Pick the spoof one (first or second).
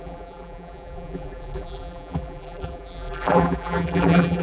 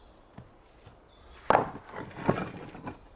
first